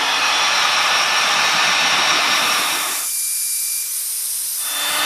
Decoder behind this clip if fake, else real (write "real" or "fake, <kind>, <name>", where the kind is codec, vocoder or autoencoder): fake, vocoder, BigVGAN v2